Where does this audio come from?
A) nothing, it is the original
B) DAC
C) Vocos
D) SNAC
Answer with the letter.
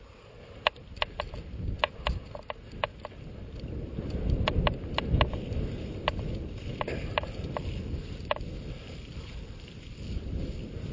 A